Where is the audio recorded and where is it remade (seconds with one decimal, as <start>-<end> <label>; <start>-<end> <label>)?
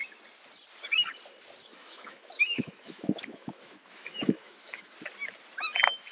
0.0-1.6 recorded; 1.6-4.9 remade; 4.9-6.1 recorded